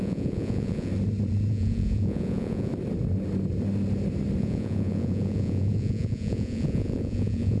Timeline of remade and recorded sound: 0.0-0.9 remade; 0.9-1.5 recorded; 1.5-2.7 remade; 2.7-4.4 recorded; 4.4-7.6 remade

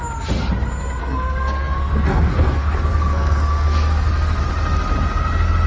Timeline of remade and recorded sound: 0.0-1.0 recorded; 1.0-4.4 remade; 4.4-5.7 recorded

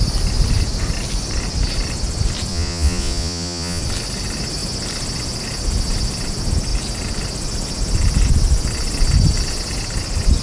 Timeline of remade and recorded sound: 0.0-2.5 recorded; 2.5-3.8 remade; 3.8-10.4 recorded

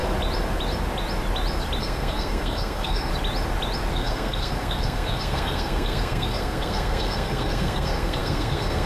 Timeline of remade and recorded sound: 0.0-1.8 recorded; 1.8-3.1 remade; 3.1-3.9 recorded; 3.9-8.9 remade

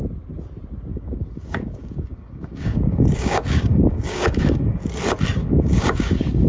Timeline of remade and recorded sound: 0.0-0.9 recorded; 0.9-4.8 remade; 4.8-5.4 recorded; 5.4-6.5 remade

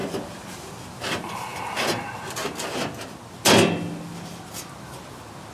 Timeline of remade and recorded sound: 0.0-0.7 remade; 0.7-5.5 recorded

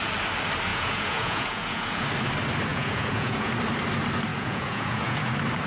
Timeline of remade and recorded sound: 0.0-0.7 recorded; 0.7-2.0 remade; 2.0-2.7 recorded; 2.7-3.5 remade; 3.5-4.3 recorded; 4.3-5.3 remade; 5.3-5.7 recorded

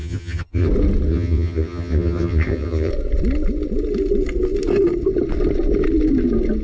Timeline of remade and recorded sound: 0.0-0.7 remade; 0.7-1.1 recorded; 1.1-2.9 remade; 2.9-6.6 recorded